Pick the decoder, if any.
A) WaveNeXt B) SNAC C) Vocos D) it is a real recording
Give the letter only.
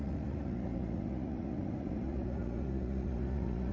C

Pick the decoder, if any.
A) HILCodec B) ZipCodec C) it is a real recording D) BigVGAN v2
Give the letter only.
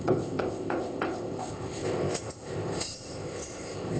B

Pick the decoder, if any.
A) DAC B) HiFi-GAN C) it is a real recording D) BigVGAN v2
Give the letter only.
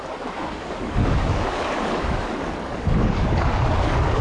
A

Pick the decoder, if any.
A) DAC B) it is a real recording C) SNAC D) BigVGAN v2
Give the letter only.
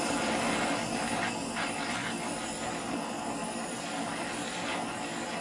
B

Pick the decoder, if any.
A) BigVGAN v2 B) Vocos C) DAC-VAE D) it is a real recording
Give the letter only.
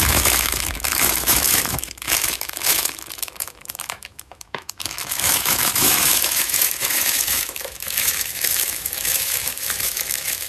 C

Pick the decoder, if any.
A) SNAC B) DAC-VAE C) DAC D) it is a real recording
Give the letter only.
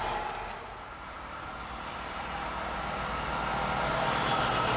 D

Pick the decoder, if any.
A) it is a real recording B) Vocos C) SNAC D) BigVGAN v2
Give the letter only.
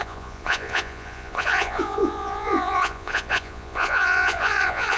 B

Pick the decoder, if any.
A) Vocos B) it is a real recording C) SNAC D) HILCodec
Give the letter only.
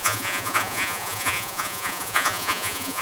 A